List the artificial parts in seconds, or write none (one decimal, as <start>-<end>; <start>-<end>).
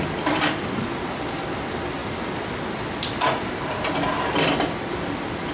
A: none